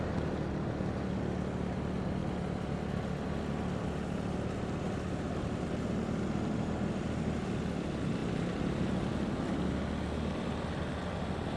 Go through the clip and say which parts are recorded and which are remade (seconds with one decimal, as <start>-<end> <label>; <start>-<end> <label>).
0.0-11.6 recorded